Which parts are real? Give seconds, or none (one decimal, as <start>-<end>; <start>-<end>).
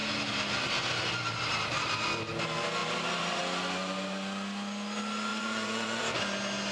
0.0-5.3; 6.0-6.7